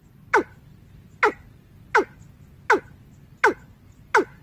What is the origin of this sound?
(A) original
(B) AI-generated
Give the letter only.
A